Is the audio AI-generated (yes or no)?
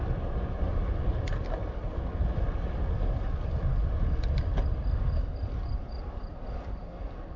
no